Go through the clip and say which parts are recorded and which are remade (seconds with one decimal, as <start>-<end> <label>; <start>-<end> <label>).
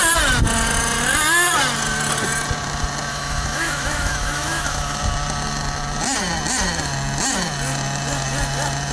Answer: 0.0-3.1 recorded; 3.1-5.0 remade; 5.0-8.9 recorded